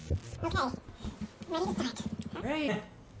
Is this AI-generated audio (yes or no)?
no